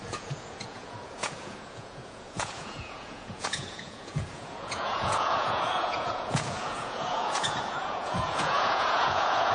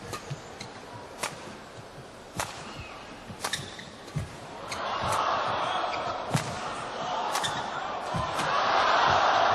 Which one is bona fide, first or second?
second